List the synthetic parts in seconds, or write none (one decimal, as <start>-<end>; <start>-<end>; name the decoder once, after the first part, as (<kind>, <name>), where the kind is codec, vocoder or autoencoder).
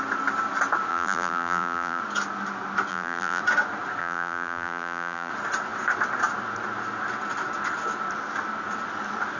0.9-2.0 (vocoder, BigVGAN v2); 2.9-3.4; 4.0-5.3